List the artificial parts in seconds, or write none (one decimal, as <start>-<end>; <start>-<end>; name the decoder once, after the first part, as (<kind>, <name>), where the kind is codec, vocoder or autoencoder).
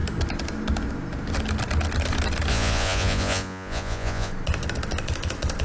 2.5-4.3 (vocoder, Vocos)